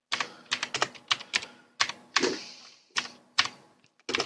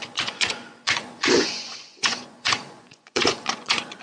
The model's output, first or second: second